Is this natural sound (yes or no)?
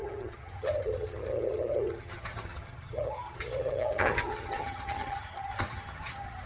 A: no